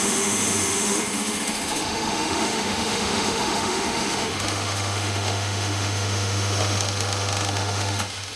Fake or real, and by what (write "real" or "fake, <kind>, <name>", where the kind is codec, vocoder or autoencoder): fake, autoencoder, DAC-VAE